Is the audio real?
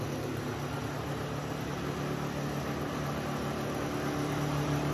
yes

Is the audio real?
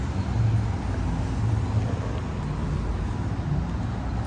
yes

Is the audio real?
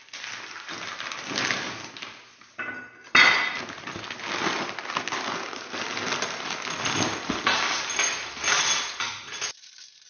yes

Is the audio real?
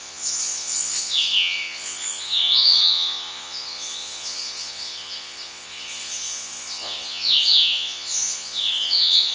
no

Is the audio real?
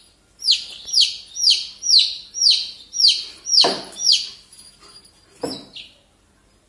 yes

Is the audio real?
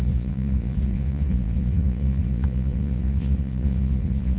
no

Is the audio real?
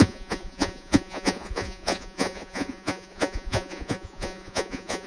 no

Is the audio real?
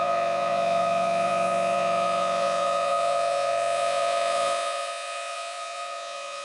no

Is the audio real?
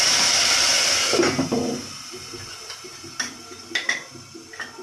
yes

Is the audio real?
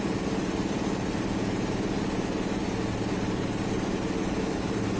yes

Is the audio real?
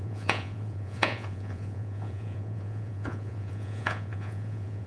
no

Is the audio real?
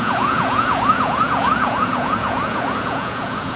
no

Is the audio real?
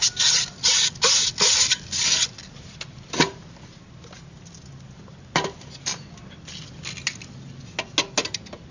yes